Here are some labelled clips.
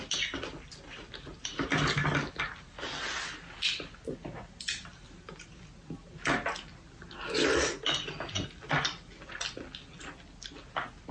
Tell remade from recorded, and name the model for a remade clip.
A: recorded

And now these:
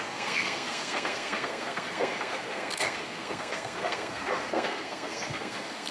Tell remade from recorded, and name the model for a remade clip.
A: remade, codec, SNAC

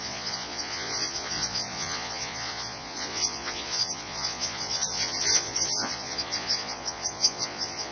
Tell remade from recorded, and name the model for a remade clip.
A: remade, vocoder, Vocos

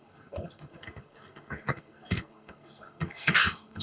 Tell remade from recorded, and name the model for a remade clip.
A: remade, codec, SNAC